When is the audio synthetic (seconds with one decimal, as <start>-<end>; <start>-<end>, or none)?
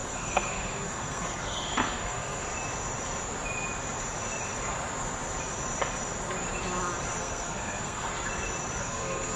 0.0-2.5; 7.2-8.1; 8.8-9.4